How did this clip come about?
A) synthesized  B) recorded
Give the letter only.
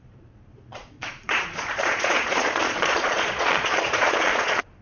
A